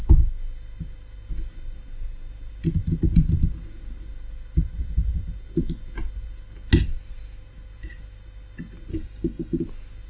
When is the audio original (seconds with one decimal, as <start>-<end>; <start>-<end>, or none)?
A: 0.0-8.9; 9.6-10.1